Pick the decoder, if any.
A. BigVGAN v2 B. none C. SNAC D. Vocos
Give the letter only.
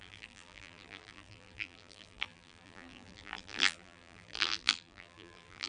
A